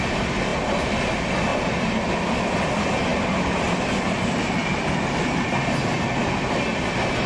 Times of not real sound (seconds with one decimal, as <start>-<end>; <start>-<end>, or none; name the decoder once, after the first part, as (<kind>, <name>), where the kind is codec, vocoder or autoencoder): none